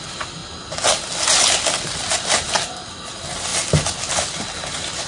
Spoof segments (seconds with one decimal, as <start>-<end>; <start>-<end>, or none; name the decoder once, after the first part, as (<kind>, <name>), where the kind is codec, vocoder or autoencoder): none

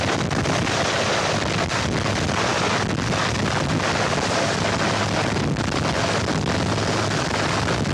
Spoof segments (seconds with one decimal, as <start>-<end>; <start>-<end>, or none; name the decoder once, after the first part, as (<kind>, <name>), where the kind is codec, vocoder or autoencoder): none

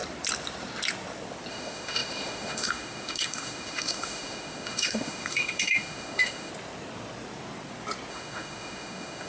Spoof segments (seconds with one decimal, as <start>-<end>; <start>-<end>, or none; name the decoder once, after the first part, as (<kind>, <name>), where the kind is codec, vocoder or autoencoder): 1.5-6.5 (autoencoder, DAC-VAE); 8.1-9.3

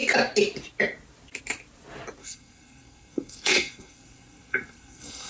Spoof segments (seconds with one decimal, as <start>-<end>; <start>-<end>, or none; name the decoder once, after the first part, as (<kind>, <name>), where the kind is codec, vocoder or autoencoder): 2.2-5.3 (codec, SNAC)

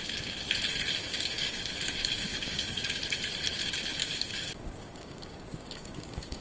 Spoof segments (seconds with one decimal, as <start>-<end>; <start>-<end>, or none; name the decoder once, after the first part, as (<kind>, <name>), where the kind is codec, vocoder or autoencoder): 1.0-1.6 (codec, DAC); 2.3-3.0; 4.0-6.4

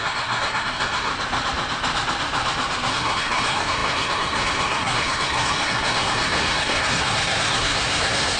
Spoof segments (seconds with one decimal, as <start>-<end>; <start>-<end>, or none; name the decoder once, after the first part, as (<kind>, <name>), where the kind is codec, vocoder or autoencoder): 0.0-1.1 (codec, SNAC); 2.9-8.4

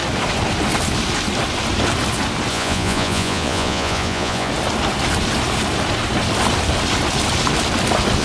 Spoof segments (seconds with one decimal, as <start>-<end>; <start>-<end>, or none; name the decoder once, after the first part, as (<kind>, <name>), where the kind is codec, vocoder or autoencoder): 2.5-4.5 (vocoder, Vocos)